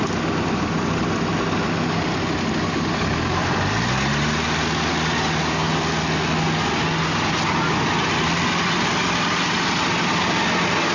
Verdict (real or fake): real